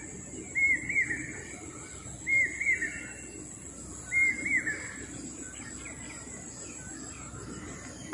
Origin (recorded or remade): recorded